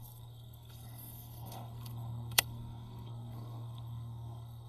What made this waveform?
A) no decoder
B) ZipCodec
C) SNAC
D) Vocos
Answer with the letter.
C